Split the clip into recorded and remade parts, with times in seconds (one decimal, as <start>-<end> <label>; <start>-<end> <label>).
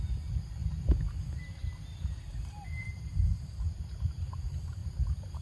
0.0-1.6 recorded; 1.6-3.8 remade; 3.8-4.8 recorded; 4.8-5.4 remade